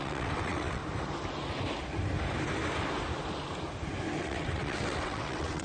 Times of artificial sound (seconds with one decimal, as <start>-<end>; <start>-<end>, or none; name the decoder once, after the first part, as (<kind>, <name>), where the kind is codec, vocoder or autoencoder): 0.0-0.8 (vocoder, WaveNeXt); 4.2-5.6